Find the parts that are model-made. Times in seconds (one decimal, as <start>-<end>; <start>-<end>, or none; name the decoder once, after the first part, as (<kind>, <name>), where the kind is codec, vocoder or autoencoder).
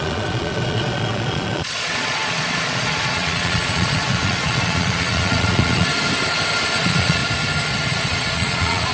0.0-5.9 (vocoder, Vocos); 6.8-7.2; 7.9-8.9